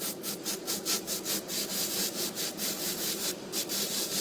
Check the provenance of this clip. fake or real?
fake